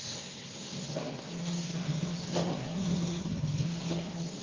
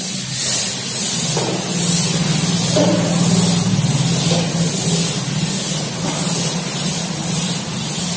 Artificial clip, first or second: first